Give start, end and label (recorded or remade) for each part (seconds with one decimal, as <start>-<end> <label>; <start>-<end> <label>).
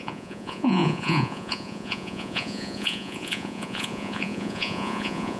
0.0-5.4 remade